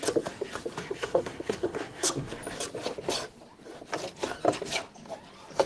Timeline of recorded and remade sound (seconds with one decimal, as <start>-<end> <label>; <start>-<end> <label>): 0.0-0.8 recorded; 0.8-2.3 remade; 2.3-5.7 recorded